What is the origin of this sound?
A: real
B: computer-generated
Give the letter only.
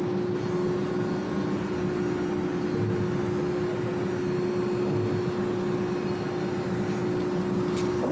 A